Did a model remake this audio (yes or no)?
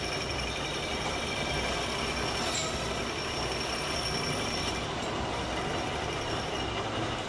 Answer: no